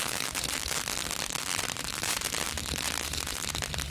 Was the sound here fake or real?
fake